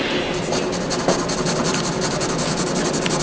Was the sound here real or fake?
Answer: real